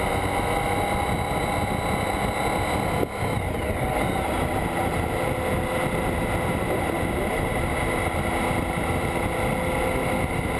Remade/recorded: recorded